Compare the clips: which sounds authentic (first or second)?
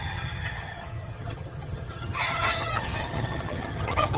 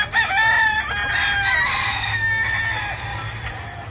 second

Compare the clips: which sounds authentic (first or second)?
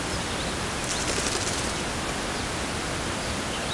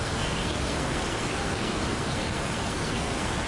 first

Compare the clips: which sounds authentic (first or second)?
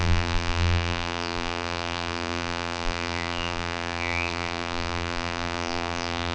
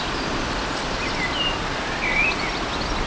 second